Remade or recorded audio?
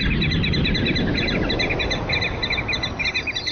recorded